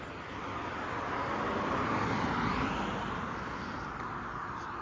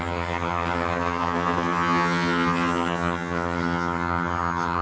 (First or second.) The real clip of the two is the first